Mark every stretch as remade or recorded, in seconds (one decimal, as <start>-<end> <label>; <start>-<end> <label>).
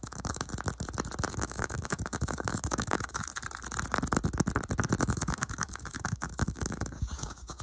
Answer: 0.0-0.5 remade; 0.5-1.3 recorded; 1.3-3.3 remade; 3.3-5.0 recorded; 5.0-7.6 remade